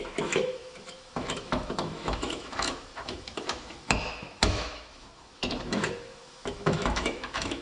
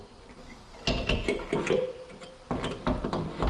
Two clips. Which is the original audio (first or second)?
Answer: second